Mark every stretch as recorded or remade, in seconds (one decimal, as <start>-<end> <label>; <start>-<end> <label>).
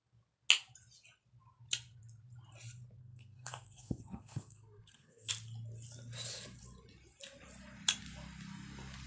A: 0.0-3.0 recorded; 3.0-5.3 remade; 5.3-9.1 recorded